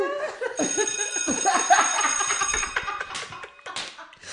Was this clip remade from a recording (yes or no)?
no